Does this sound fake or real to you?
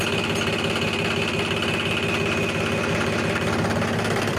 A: real